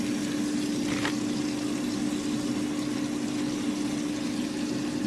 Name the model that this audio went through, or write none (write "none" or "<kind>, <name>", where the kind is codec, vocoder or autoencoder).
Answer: none